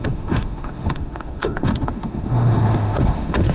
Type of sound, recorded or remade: remade